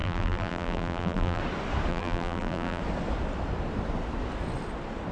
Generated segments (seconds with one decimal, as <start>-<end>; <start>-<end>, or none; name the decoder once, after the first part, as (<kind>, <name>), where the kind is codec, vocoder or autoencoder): 0.0-1.4 (vocoder, BigVGAN v2); 1.9-2.8